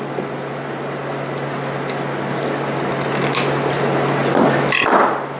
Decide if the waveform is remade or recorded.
recorded